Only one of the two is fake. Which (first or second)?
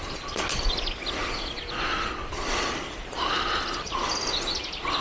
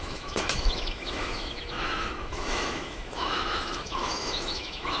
second